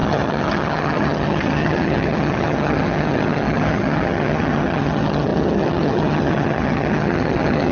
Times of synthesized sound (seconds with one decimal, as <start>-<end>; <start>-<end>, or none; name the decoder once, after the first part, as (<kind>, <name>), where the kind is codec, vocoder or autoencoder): 0.0-7.7 (vocoder, HiFi-GAN)